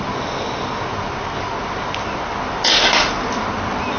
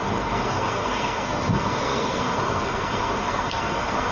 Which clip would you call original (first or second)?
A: first